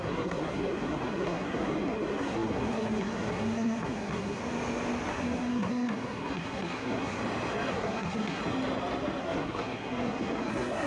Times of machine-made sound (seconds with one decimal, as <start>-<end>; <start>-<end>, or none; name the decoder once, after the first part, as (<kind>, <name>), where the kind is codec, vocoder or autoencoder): 0.0-4.4 (codec, SNAC); 5.1-7.2; 7.7-8.4; 9.2-10.9